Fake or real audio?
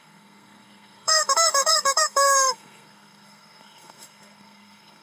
fake